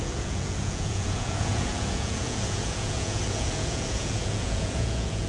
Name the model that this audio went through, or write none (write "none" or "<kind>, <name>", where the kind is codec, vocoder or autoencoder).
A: vocoder, Vocos